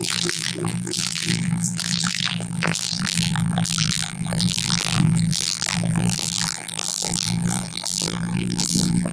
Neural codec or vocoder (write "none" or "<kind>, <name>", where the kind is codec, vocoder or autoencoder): vocoder, BigVGAN v2